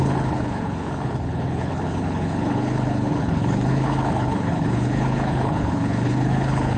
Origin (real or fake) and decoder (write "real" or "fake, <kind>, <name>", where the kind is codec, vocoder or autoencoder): fake, codec, HILCodec